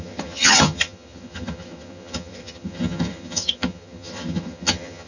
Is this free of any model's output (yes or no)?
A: no